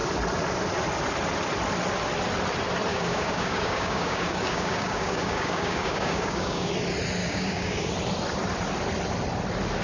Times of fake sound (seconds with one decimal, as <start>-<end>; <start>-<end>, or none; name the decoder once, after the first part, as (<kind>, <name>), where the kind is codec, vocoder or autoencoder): 2.9-6.7 (codec, DAC); 7.2-7.9